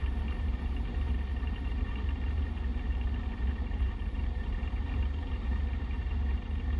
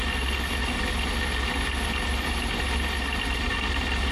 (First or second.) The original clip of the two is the second